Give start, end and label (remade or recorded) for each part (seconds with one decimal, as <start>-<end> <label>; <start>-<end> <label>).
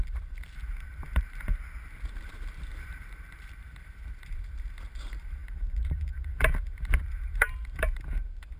0.0-1.5 remade; 1.5-2.1 recorded; 2.1-8.6 remade